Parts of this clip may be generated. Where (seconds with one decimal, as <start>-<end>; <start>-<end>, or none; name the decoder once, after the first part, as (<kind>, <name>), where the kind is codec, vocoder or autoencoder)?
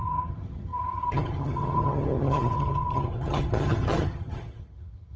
0.0-5.2 (vocoder, HiFi-GAN)